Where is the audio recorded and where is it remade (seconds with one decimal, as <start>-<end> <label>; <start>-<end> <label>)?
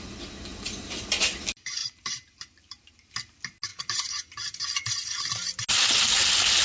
0.0-1.8 recorded; 1.8-3.1 remade; 3.1-6.6 recorded